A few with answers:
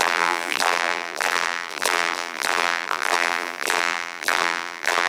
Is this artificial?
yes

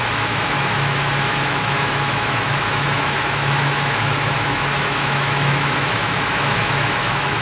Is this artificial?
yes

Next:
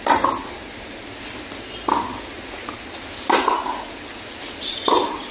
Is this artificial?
no